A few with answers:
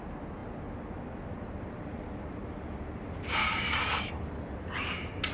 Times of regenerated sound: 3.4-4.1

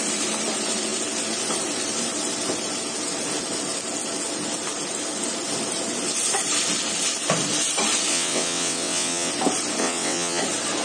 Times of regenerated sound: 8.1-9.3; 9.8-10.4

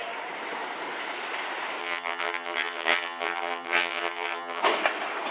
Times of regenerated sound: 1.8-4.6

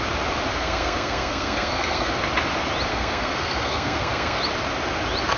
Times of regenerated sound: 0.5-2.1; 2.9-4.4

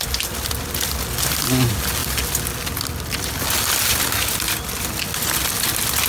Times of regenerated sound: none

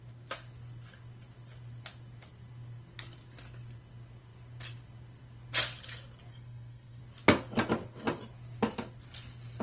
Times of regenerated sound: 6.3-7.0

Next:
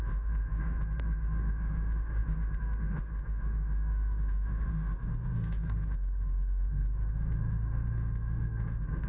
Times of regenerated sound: 0.0-9.1